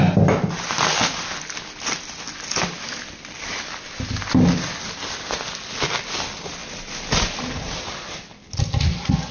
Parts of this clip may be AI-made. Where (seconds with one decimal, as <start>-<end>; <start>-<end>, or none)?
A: none